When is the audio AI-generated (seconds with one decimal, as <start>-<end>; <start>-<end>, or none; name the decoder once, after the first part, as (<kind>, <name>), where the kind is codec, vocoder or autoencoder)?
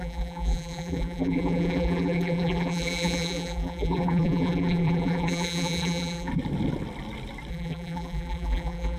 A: 0.0-6.3 (vocoder, BigVGAN v2); 7.5-9.0